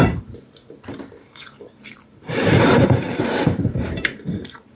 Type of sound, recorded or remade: remade